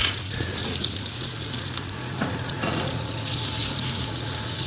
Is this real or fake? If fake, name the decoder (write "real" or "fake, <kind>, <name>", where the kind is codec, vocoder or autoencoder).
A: fake, vocoder, Vocos